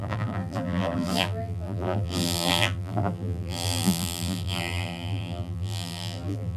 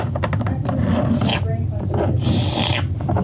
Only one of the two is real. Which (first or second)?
second